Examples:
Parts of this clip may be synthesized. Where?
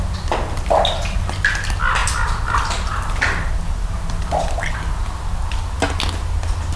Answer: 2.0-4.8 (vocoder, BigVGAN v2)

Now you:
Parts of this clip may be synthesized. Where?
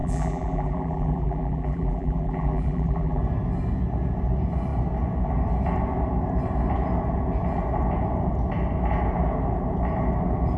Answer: 0.0-3.2 (vocoder, BigVGAN v2)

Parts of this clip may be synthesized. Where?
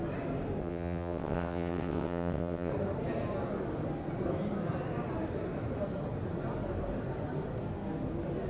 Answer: 0.6-2.7 (vocoder, WaveNeXt)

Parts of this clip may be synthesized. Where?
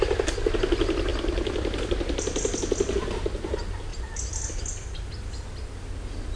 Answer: 3.9-5.1 (vocoder, BigVGAN v2)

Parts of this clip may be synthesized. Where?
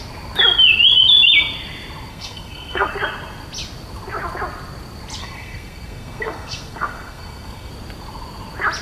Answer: 2.1-2.9 (codec, SNAC); 5.2-7.7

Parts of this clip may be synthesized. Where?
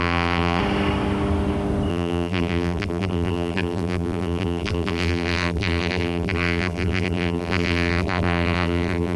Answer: 0.0-0.6 (vocoder, BigVGAN v2); 1.9-9.2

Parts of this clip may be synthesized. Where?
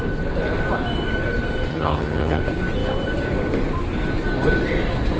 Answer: 1.7-2.4 (vocoder, HiFi-GAN)